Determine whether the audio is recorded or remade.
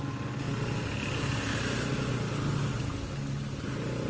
recorded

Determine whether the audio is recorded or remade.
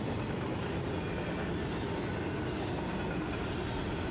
recorded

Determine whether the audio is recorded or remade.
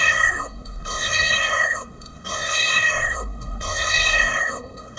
remade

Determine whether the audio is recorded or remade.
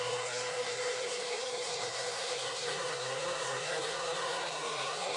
remade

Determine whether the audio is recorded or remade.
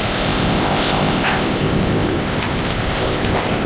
remade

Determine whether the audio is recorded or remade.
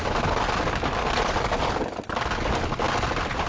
recorded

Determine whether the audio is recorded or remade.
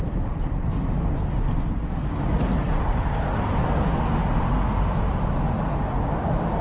recorded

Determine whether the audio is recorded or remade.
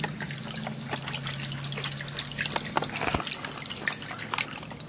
recorded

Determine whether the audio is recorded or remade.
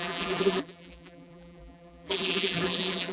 remade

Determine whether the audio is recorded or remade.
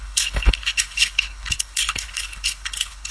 remade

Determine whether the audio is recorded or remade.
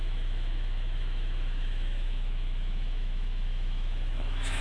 remade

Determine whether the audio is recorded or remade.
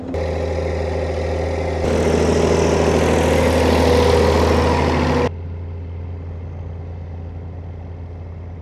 recorded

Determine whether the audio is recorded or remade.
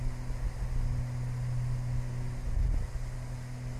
recorded